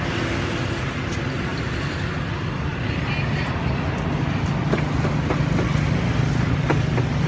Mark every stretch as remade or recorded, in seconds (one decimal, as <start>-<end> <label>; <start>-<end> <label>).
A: 0.0-7.3 recorded